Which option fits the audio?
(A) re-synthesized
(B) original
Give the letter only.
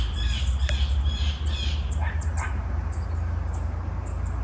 B